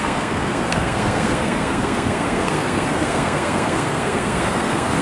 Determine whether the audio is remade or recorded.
remade